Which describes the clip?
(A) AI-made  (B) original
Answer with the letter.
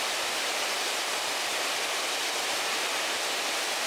B